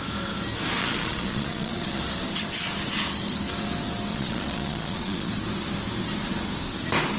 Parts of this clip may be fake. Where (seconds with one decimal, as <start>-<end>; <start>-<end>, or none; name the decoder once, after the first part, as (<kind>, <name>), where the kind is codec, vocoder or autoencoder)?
0.8-2.0 (vocoder, Vocos); 4.1-5.3

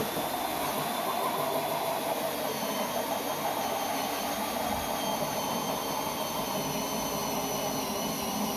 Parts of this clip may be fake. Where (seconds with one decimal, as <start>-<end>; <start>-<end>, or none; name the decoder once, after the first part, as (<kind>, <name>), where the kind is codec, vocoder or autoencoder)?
none